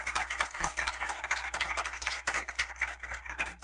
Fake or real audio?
fake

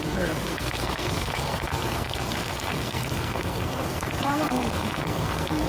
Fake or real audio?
fake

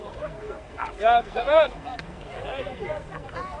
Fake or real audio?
fake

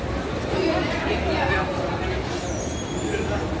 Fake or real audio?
real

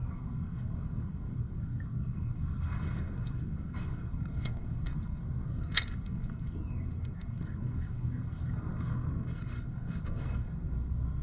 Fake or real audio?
fake